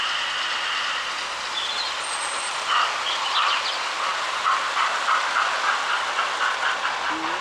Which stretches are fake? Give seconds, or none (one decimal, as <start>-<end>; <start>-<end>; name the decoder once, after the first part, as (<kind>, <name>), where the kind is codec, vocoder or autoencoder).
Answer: none